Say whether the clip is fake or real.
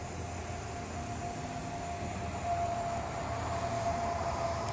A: real